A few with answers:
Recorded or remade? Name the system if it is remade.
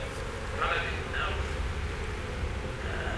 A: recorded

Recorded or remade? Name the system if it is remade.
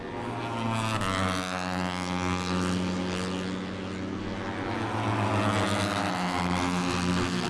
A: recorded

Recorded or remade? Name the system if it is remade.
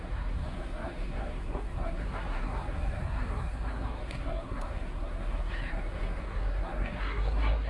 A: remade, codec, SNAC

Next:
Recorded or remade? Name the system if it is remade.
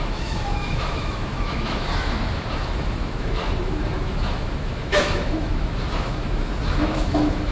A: remade, autoencoder, DAC-VAE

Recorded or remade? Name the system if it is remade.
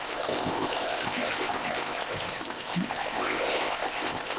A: remade, codec, ZipCodec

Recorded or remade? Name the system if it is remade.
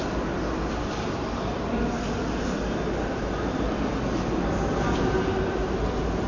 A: recorded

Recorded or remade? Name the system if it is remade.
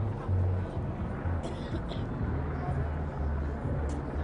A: recorded